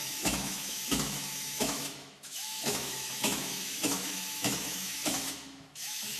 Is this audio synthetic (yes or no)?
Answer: yes